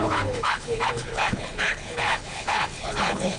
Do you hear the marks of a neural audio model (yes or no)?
yes